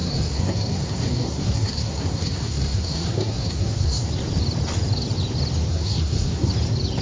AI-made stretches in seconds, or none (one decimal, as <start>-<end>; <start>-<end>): 0.0-4.1; 5.7-6.5